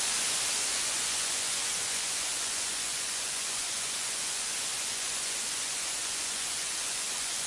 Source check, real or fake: fake